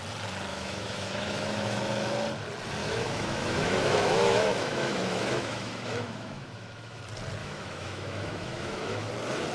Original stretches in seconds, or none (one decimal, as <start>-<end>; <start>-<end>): 0.0-0.5; 1.8-2.8; 7.0-7.4; 9.1-9.5